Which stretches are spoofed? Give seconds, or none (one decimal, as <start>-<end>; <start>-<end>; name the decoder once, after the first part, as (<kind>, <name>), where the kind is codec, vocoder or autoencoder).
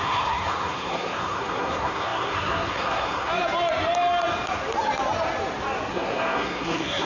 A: 0.0-3.3 (codec, SNAC); 5.9-7.1